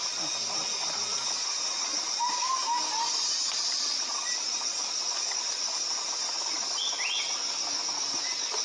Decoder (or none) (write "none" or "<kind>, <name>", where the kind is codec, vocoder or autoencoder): none